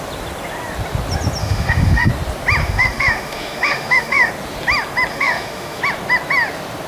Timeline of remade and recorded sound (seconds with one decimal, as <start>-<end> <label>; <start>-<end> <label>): 0.0-1.4 recorded; 1.4-2.1 remade; 2.1-2.6 recorded; 2.6-4.3 remade; 4.3-5.1 recorded; 5.1-5.8 remade; 5.8-6.9 recorded